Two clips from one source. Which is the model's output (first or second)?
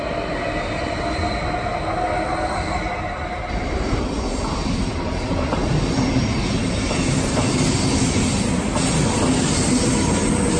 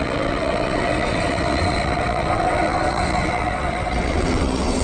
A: second